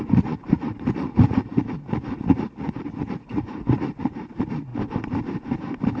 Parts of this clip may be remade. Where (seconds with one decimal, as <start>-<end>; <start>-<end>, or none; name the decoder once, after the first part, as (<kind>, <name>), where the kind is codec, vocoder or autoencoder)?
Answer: 0.0-4.7 (vocoder, Vocos)